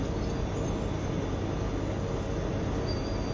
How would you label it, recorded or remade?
recorded